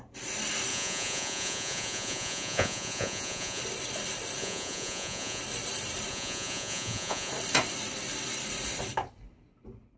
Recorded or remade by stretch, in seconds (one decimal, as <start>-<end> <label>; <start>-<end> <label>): 0.0-0.7 recorded; 0.7-3.6 remade; 3.6-4.4 recorded; 4.4-5.4 remade; 5.4-6.1 recorded; 6.1-7.3 remade; 7.3-10.0 recorded